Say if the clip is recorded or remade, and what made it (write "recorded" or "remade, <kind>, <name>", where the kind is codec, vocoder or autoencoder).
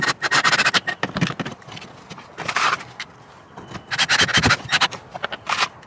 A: recorded